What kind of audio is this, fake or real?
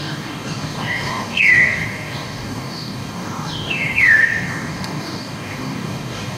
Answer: fake